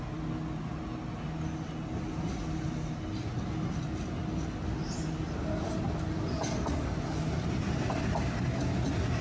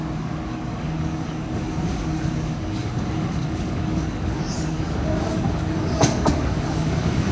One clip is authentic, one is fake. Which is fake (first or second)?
second